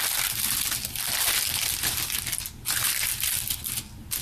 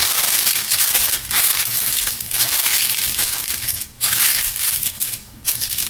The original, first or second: first